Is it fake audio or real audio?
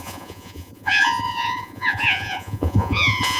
fake